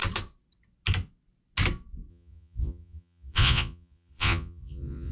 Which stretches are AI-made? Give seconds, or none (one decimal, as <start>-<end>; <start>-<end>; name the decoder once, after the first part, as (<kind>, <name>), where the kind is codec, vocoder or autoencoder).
2.1-5.1 (vocoder, Vocos)